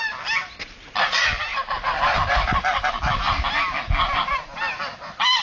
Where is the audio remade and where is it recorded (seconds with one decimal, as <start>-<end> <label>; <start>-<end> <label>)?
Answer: 0.0-4.3 remade; 4.3-5.4 recorded